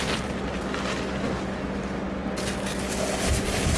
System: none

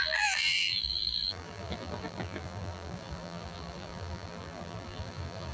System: vocoder, BigVGAN v2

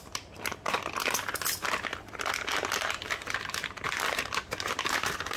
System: none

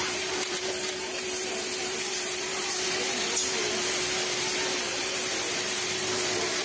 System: vocoder, BigVGAN v2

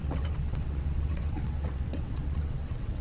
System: vocoder, WaveNeXt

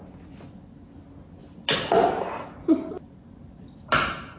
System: none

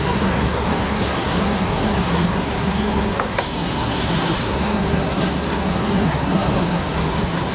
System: codec, SNAC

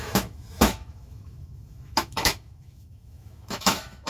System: autoencoder, DAC-VAE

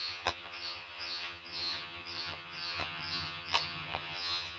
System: vocoder, HiFi-GAN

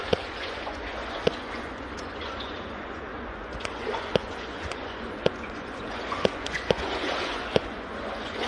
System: vocoder, Vocos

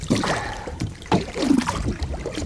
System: vocoder, BigVGAN v2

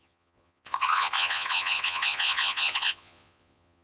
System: vocoder, Vocos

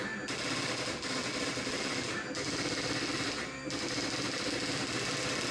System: none